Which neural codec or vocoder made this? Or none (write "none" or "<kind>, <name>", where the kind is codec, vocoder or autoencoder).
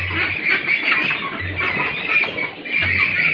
none